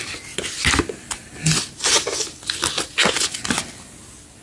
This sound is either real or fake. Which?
real